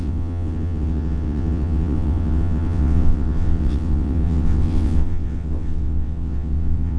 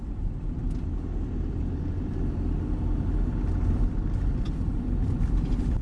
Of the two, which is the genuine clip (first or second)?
second